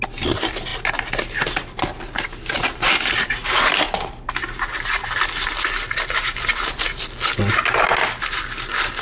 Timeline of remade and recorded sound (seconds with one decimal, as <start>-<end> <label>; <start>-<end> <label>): 0.0-9.0 recorded